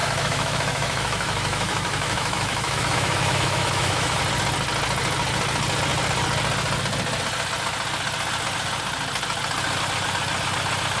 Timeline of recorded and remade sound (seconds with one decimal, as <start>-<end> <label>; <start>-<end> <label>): 0.0-4.2 remade; 4.2-11.0 recorded